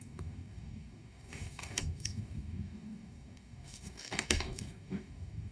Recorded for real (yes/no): no